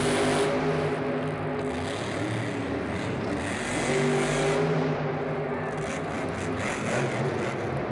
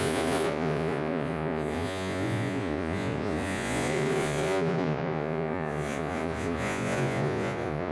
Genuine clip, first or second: first